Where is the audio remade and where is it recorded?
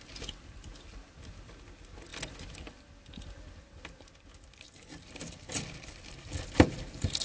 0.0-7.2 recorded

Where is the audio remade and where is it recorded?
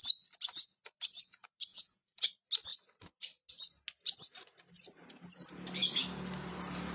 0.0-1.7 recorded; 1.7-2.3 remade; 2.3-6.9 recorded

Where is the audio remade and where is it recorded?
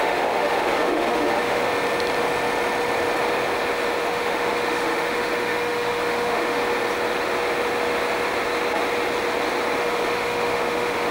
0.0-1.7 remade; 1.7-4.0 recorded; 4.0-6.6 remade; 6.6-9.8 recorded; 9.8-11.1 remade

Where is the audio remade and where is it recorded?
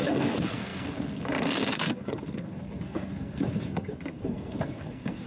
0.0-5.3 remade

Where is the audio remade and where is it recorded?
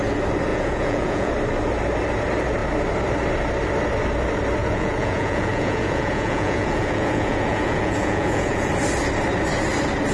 0.0-0.5 recorded; 0.5-1.3 remade; 1.3-4.6 recorded; 4.6-8.7 remade; 8.7-10.1 recorded